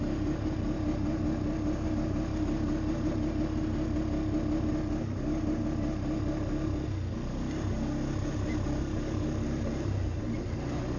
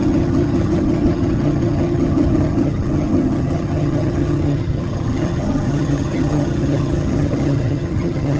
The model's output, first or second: second